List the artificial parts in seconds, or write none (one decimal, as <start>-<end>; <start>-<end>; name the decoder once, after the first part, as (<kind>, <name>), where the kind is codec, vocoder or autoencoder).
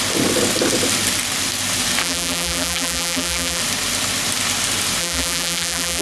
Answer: 2.0-3.6 (vocoder, BigVGAN v2); 5.0-6.0